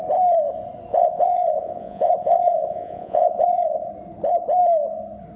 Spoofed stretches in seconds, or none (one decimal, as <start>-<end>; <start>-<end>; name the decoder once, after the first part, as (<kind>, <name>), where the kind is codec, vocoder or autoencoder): 0.9-3.9 (vocoder, Vocos)

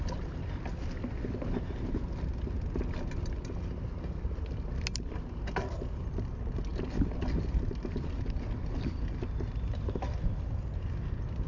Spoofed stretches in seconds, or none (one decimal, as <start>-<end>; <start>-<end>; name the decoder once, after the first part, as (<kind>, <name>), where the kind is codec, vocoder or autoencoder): none

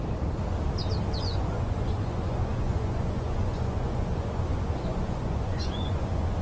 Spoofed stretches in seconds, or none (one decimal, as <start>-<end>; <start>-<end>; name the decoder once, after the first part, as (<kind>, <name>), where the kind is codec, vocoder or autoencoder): 1.2-6.4 (vocoder, Vocos)

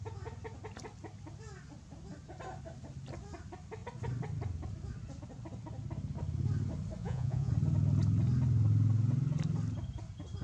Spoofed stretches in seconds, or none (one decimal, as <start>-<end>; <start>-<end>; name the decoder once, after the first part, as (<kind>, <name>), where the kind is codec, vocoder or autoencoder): 7.0-7.5 (vocoder, Vocos)

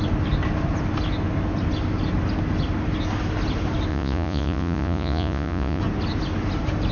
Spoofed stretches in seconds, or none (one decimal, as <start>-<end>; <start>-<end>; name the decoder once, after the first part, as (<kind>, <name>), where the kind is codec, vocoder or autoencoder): 3.9-5.8 (vocoder, Vocos)